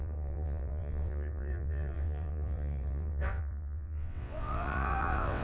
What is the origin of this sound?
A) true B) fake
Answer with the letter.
B